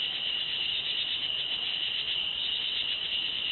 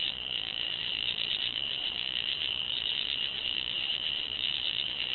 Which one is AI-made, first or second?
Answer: second